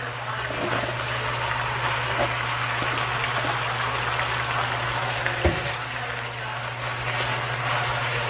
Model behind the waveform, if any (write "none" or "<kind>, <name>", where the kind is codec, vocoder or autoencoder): none